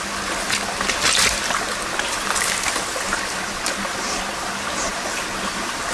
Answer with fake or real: real